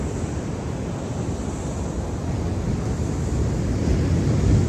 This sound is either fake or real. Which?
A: real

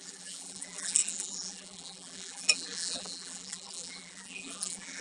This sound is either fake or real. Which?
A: fake